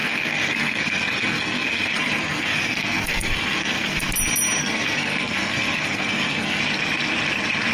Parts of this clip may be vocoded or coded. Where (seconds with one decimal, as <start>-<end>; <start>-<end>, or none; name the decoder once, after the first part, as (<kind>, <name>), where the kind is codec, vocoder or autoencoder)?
0.0-4.1 (codec, SNAC); 4.6-6.6